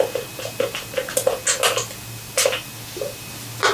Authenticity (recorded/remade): recorded